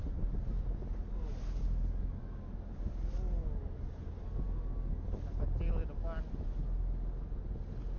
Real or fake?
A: real